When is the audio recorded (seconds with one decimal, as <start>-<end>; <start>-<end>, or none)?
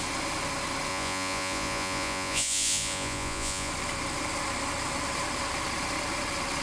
0.0-0.9; 3.7-6.6